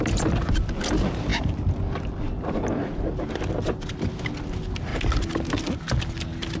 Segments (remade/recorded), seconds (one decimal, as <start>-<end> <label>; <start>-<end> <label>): 0.0-6.6 recorded